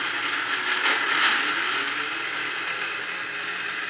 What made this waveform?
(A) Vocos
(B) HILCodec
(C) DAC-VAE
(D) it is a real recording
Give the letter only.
D